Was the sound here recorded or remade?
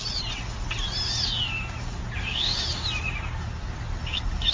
recorded